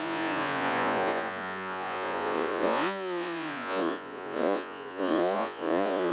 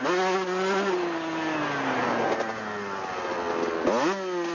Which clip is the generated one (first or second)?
first